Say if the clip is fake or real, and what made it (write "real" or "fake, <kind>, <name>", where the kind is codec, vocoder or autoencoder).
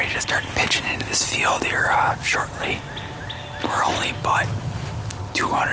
real